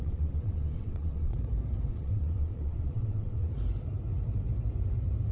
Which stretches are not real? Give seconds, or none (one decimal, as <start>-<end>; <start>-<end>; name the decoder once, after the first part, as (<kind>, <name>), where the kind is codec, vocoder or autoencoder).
0.0-1.3 (vocoder, WaveNeXt); 1.9-3.5